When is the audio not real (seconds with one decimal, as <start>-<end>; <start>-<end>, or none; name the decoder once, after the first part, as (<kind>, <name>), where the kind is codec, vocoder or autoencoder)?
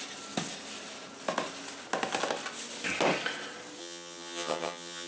3.8-5.1 (vocoder, HiFi-GAN)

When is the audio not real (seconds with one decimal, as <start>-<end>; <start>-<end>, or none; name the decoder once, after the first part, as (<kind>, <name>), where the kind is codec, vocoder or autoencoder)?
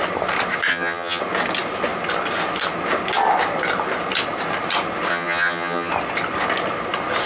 0.7-1.2 (vocoder, HiFi-GAN); 5.1-5.9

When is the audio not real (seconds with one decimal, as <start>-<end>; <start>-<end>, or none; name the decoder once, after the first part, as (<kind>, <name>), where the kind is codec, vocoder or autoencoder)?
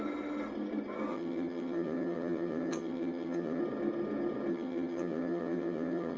1.1-3.6 (vocoder, HiFi-GAN); 4.5-6.2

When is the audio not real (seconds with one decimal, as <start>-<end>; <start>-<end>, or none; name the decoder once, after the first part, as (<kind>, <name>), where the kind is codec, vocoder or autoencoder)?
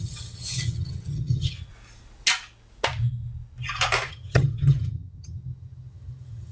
0.0-1.7 (vocoder, HiFi-GAN); 4.1-6.5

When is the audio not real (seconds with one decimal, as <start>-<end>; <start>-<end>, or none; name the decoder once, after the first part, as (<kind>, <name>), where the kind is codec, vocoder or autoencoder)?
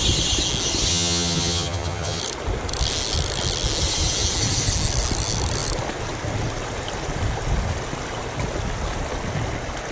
0.9-2.2 (vocoder, HiFi-GAN)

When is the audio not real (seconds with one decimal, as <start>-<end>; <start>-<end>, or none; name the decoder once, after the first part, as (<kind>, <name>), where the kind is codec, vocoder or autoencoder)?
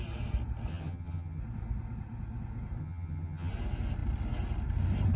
0.7-1.4 (vocoder, HiFi-GAN); 2.8-3.5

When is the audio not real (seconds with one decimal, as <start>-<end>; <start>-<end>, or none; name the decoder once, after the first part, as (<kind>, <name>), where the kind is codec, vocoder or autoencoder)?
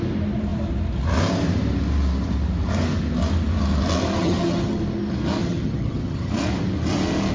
4.2-4.8 (vocoder, HiFi-GAN); 5.4-6.3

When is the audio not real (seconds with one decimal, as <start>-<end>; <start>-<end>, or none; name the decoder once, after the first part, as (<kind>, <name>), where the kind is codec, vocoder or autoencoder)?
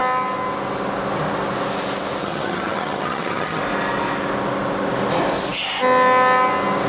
2.2-3.6 (vocoder, HiFi-GAN)